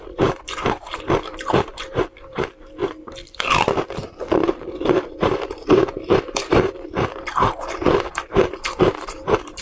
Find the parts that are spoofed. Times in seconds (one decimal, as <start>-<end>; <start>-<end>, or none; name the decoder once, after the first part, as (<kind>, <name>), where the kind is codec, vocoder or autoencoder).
0.0-2.8 (vocoder, BigVGAN v2); 4.4-9.6